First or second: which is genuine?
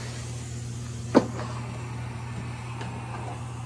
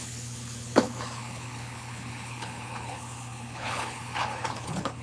first